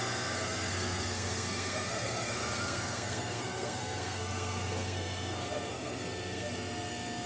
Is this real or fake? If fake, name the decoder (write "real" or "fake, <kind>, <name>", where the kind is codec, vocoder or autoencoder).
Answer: fake, codec, SNAC